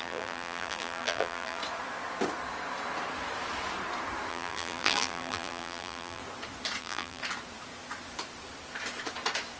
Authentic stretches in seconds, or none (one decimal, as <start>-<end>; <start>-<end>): 1.6-4.3; 6.2-6.8; 7.2-9.6